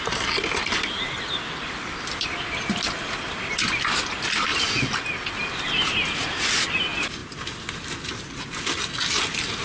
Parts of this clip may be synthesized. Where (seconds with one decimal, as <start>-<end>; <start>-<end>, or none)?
none